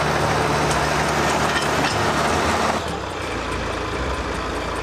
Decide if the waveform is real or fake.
real